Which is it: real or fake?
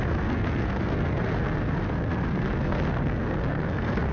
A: fake